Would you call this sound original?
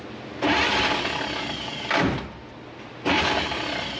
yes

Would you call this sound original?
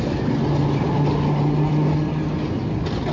yes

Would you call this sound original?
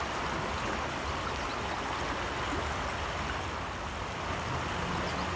yes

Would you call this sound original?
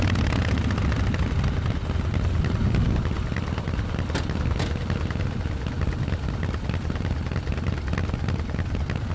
yes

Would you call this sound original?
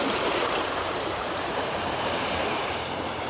no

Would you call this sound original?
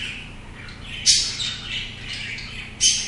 yes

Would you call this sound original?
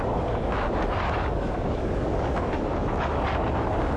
no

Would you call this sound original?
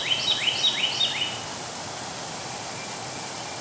yes